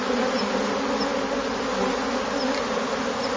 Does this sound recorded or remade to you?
recorded